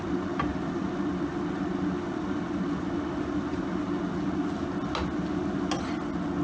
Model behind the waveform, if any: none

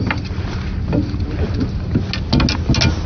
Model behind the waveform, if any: none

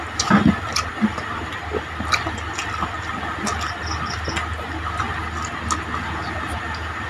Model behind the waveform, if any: none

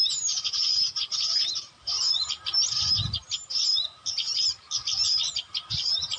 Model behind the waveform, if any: none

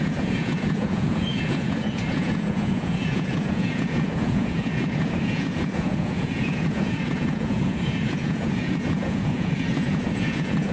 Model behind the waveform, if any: vocoder, Vocos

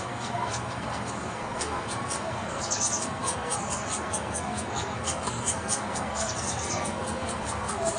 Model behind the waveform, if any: codec, SNAC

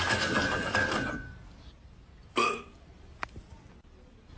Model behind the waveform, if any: vocoder, BigVGAN v2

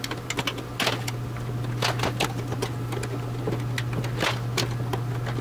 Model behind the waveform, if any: none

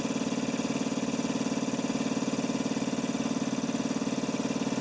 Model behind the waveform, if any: none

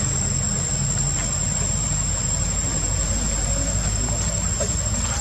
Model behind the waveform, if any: none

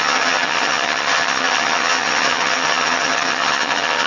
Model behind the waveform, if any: vocoder, HiFi-GAN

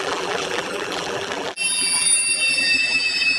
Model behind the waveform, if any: vocoder, BigVGAN v2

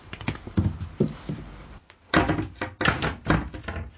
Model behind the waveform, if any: none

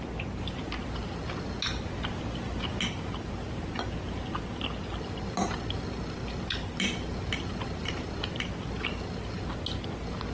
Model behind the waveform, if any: none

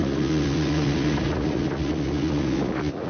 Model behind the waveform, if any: vocoder, Vocos